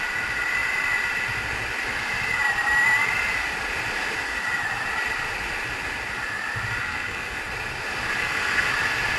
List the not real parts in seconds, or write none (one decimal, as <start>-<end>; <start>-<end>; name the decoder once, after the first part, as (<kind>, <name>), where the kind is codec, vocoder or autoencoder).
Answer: 6.8-7.4 (codec, SNAC); 8.2-8.7

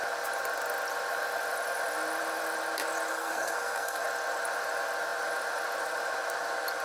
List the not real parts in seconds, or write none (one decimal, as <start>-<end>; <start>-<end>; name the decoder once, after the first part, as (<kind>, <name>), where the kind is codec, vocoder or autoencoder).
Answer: 3.1-4.0 (codec, SNAC)